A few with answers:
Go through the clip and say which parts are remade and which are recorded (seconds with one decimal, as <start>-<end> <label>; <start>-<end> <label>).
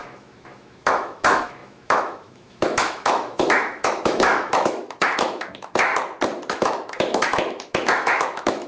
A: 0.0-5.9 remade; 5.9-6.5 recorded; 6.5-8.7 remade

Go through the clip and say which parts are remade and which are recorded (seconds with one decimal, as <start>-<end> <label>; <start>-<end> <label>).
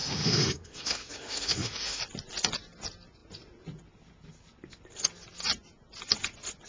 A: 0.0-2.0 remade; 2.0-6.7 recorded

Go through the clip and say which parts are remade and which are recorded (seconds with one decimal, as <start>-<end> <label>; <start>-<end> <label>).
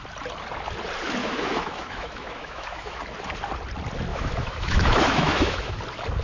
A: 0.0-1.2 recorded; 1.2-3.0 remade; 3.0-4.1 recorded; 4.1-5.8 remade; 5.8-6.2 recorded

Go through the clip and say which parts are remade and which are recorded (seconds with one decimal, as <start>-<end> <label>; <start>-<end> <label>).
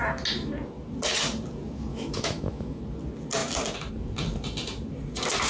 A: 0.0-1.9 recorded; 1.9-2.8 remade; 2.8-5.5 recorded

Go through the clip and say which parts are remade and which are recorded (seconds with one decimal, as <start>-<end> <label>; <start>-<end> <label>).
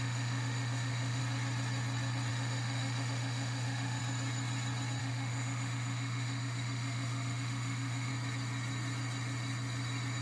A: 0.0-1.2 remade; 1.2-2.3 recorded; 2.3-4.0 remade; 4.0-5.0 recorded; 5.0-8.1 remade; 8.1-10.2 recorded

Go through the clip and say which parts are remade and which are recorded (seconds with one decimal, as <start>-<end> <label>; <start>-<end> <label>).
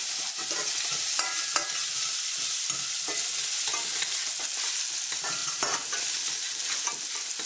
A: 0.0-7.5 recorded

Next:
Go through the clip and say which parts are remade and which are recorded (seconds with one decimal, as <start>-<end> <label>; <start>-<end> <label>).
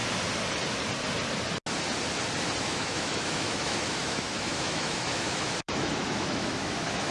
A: 0.0-2.6 recorded; 2.6-7.1 remade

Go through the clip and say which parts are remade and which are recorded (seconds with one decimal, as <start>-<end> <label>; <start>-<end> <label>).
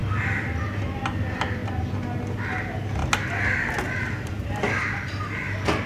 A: 0.0-5.9 recorded